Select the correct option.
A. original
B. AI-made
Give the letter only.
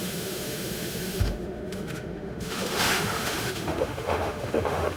B